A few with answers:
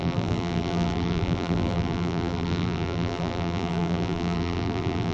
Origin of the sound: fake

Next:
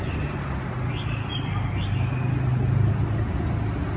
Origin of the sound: real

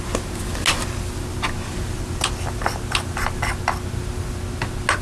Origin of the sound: real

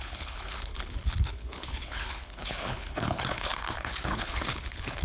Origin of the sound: fake